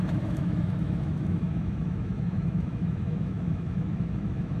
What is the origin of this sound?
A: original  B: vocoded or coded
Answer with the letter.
B